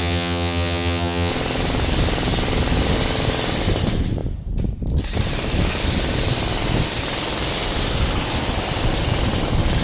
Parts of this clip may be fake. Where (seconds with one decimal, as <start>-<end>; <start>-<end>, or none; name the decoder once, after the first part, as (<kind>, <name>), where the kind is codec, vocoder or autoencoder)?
0.0-1.3 (vocoder, HiFi-GAN)